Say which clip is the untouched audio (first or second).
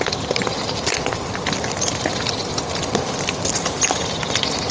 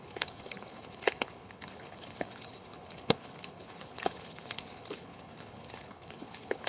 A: first